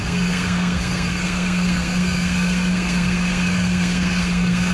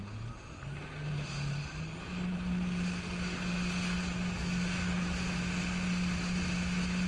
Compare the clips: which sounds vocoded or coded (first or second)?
first